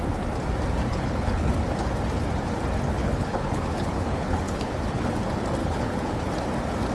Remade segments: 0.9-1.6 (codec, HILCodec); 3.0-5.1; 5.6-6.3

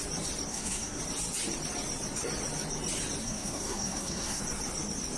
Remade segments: 0.5-1.0 (codec, SNAC); 3.2-4.4

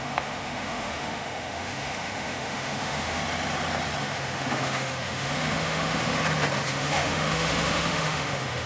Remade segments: 0.0-3.2 (autoencoder, DAC-VAE); 4.0-6.1; 6.7-8.7

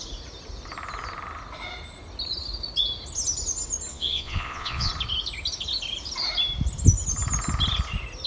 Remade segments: 3.9-4.9 (vocoder, Vocos)

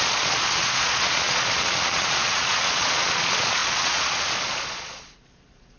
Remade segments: 0.0-5.8 (vocoder, Vocos)

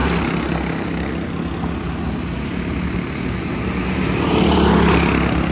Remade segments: none